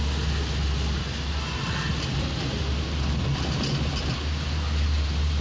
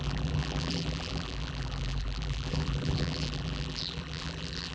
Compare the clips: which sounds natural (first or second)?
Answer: first